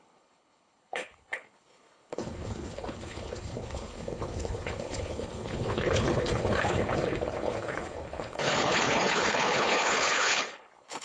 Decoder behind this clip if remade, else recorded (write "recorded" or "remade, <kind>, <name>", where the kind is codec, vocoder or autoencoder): remade, codec, HILCodec